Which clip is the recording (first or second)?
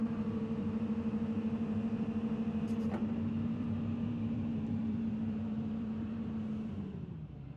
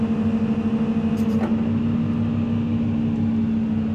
second